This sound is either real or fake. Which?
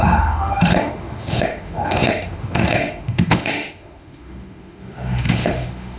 fake